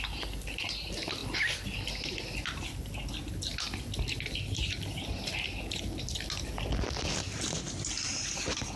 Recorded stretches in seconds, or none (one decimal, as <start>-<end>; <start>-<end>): 0.0-8.8